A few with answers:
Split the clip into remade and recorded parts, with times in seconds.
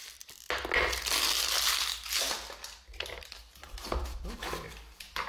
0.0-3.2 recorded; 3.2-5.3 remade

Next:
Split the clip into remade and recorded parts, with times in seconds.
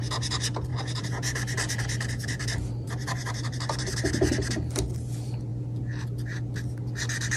0.0-0.7 recorded; 0.7-4.0 remade; 4.0-7.4 recorded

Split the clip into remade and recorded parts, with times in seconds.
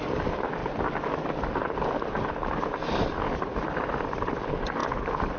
0.0-0.6 remade; 0.6-2.3 recorded; 2.3-5.4 remade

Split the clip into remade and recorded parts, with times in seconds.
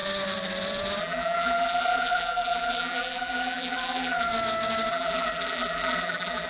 0.0-1.0 recorded; 1.0-4.3 remade; 4.3-4.9 recorded; 4.9-6.5 remade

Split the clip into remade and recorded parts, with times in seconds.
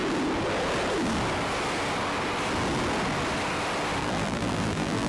0.0-4.0 recorded; 4.0-5.1 remade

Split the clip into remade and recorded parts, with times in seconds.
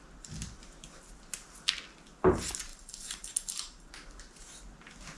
0.0-2.7 recorded; 2.7-3.9 remade; 3.9-5.2 recorded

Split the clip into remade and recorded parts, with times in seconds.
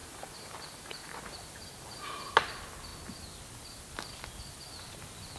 0.0-2.3 remade; 2.3-5.4 recorded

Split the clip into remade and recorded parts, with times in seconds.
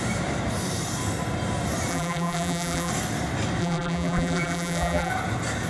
0.0-1.9 recorded; 1.9-2.9 remade; 2.9-3.6 recorded; 3.6-5.1 remade; 5.1-5.7 recorded